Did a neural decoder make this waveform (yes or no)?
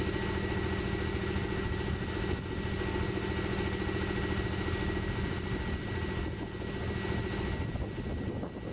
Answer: no